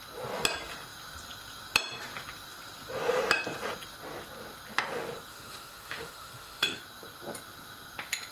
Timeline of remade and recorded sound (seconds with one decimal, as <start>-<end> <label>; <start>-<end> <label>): 0.0-5.3 recorded; 5.3-6.8 remade; 6.8-8.3 recorded